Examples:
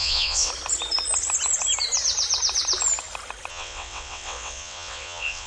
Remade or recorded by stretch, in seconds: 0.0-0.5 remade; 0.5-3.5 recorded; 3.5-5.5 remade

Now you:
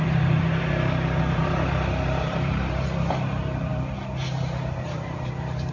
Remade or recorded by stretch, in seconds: 0.0-3.7 remade; 3.7-4.8 recorded; 4.8-5.7 remade

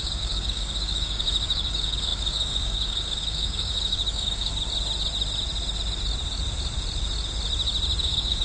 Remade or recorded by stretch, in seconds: 0.0-4.5 remade; 4.5-8.0 recorded; 8.0-8.4 remade

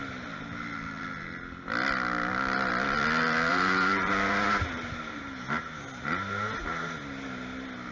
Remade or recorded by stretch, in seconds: 0.0-3.5 recorded; 3.5-5.2 remade; 5.2-7.9 recorded

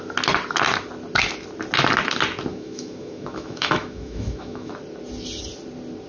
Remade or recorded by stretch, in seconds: 0.0-2.5 recorded; 2.5-4.7 remade; 4.7-6.1 recorded

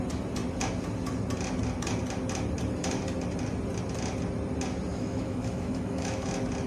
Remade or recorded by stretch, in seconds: 0.0-4.9 recorded; 4.9-6.3 remade; 6.3-6.7 recorded